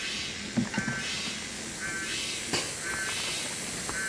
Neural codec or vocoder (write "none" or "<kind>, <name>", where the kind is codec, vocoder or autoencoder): none